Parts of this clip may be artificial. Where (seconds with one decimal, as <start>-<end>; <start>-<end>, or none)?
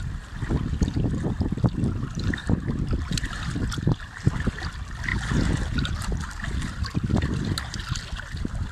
none